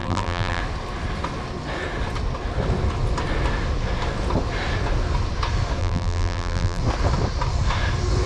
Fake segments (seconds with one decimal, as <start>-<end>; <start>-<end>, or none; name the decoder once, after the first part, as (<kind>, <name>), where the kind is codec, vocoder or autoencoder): 0.0-0.6 (vocoder, BigVGAN v2); 5.8-6.8